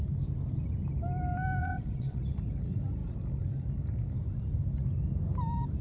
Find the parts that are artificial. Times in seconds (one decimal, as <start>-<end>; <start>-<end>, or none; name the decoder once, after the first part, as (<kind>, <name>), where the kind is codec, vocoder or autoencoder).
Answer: 1.6-2.2 (vocoder, WaveNeXt)